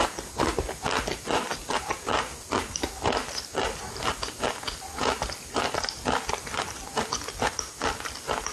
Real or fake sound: real